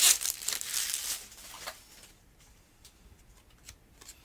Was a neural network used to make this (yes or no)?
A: no